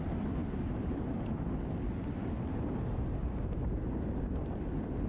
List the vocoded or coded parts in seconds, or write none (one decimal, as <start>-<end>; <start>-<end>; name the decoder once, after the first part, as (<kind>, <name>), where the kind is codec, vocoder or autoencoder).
3.2-3.8 (vocoder, BigVGAN v2)